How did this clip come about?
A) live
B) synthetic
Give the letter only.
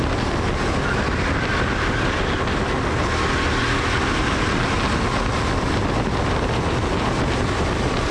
A